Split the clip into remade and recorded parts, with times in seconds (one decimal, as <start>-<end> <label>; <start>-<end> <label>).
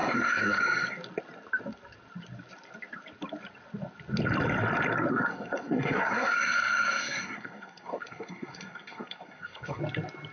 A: 0.0-0.6 remade; 0.6-5.1 recorded; 5.1-9.8 remade; 9.8-10.3 recorded